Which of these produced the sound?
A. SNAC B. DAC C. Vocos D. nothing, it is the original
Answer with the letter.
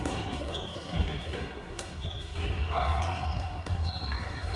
A